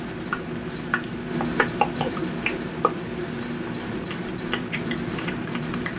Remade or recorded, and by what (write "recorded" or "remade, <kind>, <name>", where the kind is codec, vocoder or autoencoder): remade, vocoder, BigVGAN v2